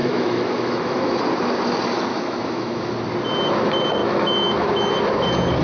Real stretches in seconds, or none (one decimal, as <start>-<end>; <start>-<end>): 1.2-2.1; 2.9-4.0; 4.9-5.6